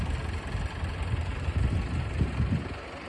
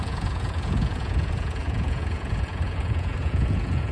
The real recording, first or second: first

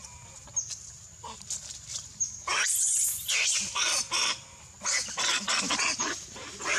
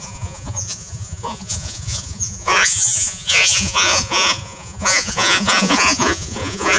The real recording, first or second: first